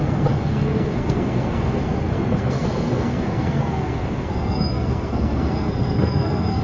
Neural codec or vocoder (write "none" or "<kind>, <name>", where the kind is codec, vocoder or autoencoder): codec, SNAC